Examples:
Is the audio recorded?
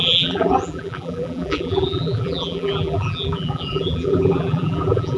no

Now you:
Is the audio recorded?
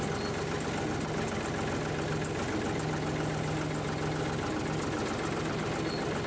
yes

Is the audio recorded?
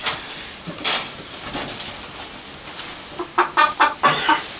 yes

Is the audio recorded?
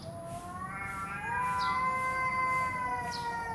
yes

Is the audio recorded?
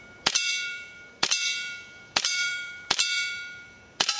no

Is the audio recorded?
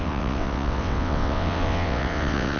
no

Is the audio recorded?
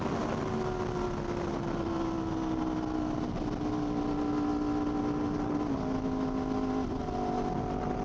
yes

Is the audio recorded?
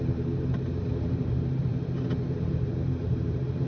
no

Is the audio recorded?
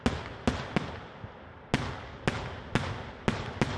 yes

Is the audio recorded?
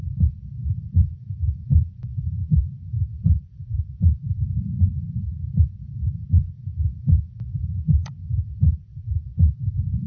no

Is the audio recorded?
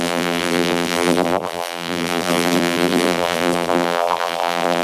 no